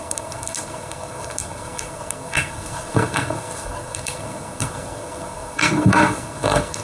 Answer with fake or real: fake